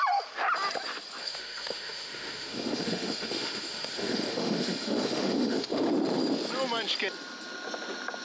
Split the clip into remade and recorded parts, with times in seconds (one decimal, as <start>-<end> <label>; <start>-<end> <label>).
0.0-1.2 recorded; 1.2-5.9 remade; 5.9-8.2 recorded